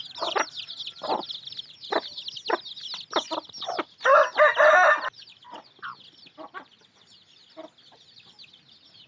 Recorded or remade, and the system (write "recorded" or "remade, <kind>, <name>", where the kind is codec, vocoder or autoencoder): recorded